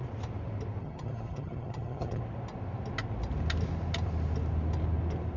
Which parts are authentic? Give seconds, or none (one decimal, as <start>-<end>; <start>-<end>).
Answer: 0.0-0.8; 2.2-5.4